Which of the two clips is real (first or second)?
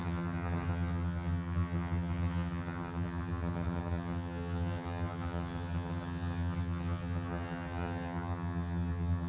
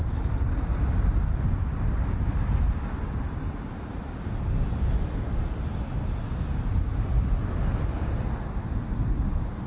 second